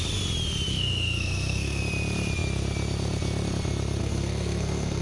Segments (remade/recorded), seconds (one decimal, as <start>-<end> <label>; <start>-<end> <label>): 0.0-0.7 recorded; 0.7-1.8 remade; 1.8-4.0 recorded; 4.0-5.0 remade